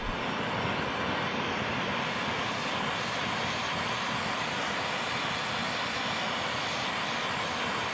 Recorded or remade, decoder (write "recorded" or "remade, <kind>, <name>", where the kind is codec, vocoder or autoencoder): recorded